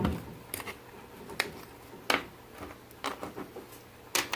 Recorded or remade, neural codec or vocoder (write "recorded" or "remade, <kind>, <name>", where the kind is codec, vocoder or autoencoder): recorded